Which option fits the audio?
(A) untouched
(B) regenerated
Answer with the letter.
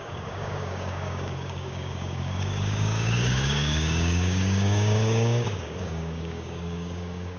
B